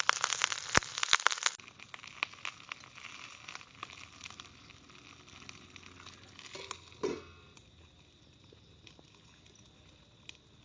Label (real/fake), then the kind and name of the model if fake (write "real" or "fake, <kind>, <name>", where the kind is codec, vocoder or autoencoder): real